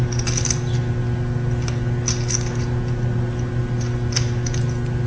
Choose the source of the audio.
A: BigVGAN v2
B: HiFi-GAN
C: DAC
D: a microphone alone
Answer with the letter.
D